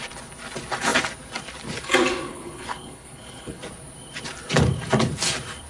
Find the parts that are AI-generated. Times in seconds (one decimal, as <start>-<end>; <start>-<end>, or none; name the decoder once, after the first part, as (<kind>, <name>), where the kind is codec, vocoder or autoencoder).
2.3-3.6 (codec, HILCodec)